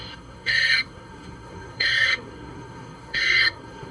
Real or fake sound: fake